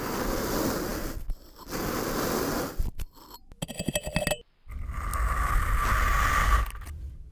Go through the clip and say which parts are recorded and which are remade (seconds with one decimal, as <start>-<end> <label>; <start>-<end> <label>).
0.0-7.3 recorded